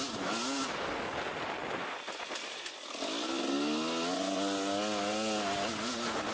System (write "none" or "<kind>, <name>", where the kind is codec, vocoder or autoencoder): none